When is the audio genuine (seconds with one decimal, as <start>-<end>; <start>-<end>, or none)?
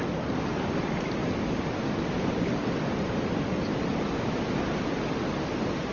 0.0-5.9